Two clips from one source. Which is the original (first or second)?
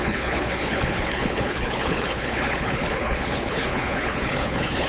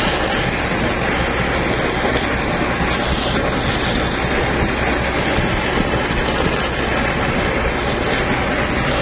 second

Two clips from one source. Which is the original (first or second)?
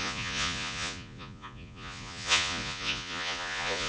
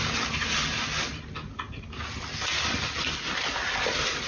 second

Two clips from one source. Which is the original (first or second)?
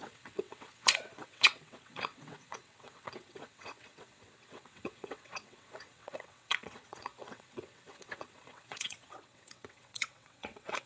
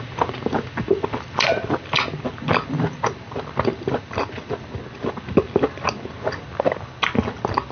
second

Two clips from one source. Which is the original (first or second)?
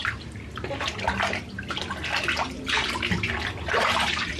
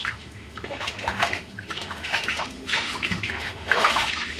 first